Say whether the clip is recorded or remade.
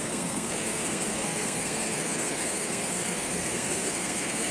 remade